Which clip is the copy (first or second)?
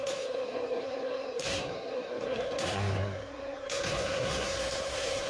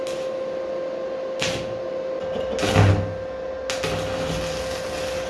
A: first